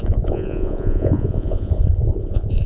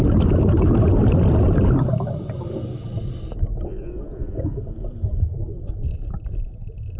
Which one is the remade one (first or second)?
first